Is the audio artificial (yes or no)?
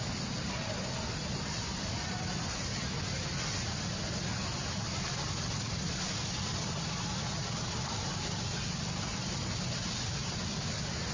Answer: no